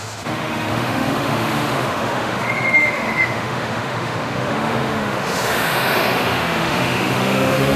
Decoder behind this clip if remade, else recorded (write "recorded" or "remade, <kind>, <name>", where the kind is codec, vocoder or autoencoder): remade, autoencoder, DAC-VAE